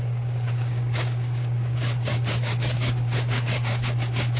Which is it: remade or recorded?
remade